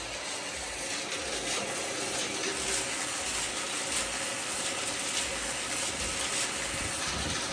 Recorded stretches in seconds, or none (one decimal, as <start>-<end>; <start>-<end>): 0.0-7.5